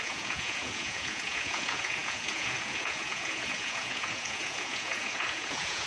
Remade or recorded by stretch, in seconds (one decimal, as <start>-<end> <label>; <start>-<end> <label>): 0.0-5.9 remade